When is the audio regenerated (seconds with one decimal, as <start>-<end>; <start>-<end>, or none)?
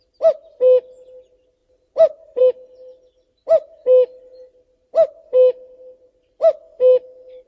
1.6-2.4